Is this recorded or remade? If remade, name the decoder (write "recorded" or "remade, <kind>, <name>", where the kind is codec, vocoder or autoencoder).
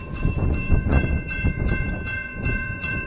remade, vocoder, Vocos